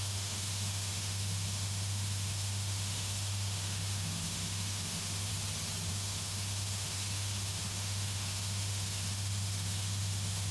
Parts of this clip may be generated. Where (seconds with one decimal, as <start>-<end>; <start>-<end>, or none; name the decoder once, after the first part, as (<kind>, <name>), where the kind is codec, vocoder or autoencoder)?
0.0-5.3 (autoencoder, DAC-VAE); 5.9-10.5